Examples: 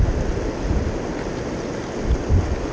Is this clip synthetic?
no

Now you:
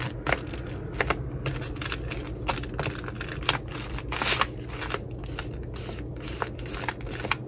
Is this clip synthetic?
no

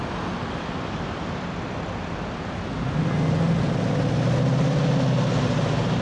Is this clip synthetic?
no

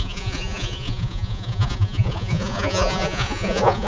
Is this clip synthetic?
yes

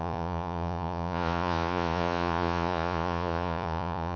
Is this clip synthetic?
yes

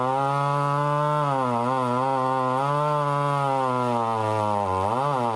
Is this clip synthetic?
no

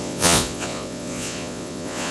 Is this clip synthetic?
yes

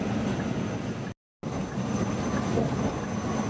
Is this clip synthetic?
no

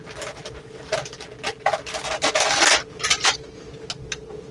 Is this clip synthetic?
no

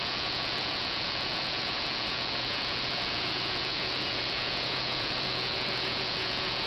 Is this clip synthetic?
yes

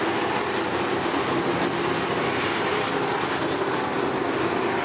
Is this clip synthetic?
no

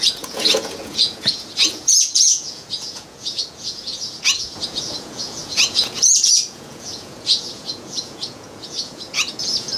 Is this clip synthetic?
yes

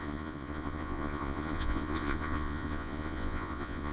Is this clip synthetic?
yes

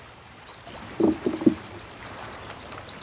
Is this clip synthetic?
no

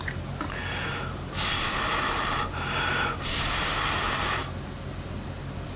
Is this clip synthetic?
no